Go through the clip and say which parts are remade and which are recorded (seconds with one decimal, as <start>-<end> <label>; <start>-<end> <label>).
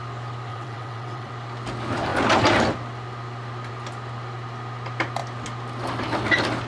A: 0.0-0.5 recorded; 0.5-1.3 remade; 1.3-6.7 recorded